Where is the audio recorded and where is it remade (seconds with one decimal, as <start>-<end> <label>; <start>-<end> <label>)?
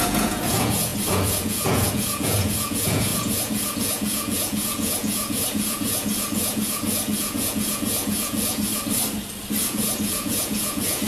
0.0-8.7 remade; 8.7-9.6 recorded; 9.6-11.1 remade